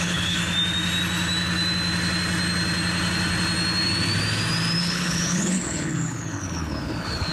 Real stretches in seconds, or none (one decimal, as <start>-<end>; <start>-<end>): 0.4-4.8